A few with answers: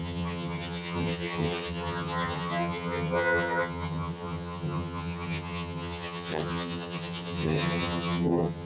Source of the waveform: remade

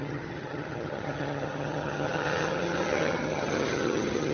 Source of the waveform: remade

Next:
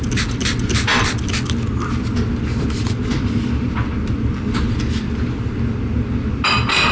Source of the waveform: recorded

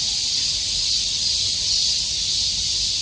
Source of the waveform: recorded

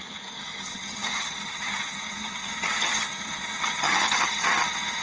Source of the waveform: remade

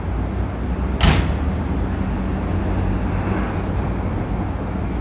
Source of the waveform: recorded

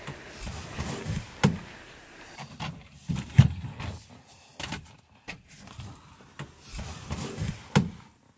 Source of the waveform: recorded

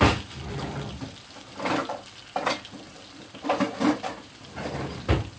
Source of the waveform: recorded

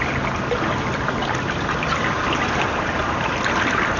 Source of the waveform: recorded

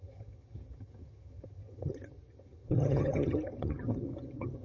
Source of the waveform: remade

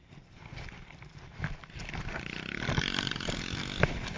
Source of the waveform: recorded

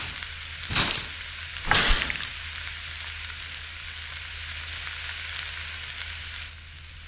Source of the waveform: recorded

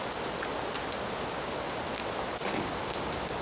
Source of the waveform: recorded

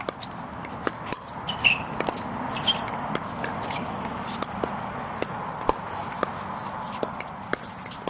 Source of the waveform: recorded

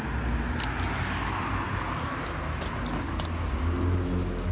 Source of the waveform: recorded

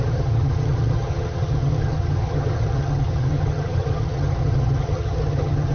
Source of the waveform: remade